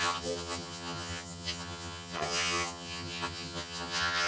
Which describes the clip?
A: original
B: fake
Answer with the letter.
B